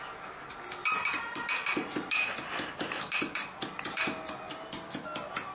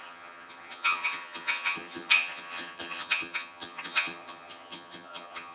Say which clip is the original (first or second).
first